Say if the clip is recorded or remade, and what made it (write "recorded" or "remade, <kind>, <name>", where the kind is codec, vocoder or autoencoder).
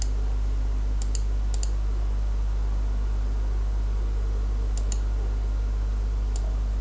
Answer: recorded